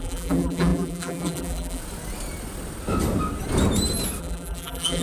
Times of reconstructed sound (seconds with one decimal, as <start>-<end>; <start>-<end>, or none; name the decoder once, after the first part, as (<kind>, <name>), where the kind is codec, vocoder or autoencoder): 0.0-1.8 (vocoder, BigVGAN v2); 4.2-5.0